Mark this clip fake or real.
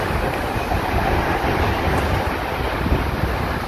real